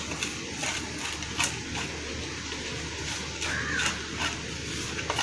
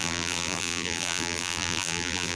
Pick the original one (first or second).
first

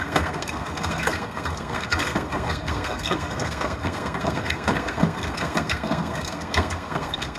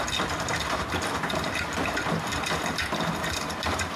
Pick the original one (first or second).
second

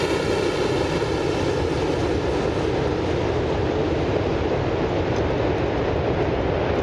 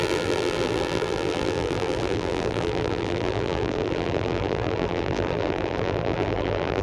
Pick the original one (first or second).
first